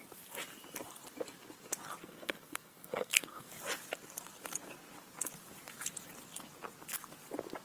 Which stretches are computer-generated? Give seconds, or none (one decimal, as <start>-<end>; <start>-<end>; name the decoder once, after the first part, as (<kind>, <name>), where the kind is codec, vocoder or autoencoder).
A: 2.0-3.5 (codec, SNAC)